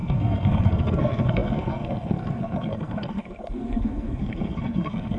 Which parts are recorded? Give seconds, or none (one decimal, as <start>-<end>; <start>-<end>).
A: none